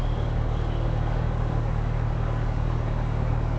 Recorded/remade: remade